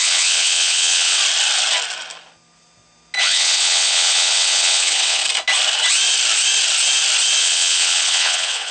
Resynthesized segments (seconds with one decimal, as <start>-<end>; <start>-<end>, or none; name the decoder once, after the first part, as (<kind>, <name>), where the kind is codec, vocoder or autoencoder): 0.0-1.2 (vocoder, WaveNeXt); 3.2-5.2; 7.4-8.7